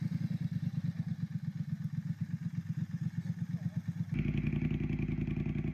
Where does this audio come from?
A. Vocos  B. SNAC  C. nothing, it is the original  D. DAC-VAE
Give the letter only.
C